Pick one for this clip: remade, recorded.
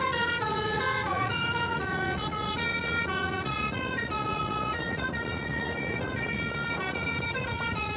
remade